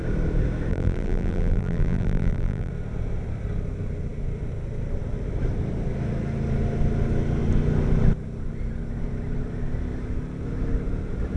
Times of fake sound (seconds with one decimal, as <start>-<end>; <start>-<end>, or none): 0.7-2.7